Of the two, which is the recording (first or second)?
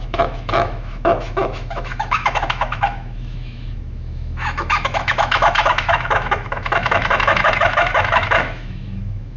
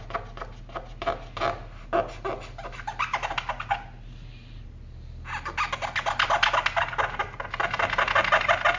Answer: second